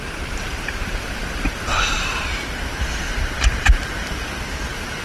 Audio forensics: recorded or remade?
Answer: remade